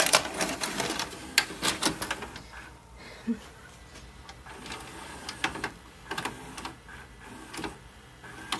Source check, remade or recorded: recorded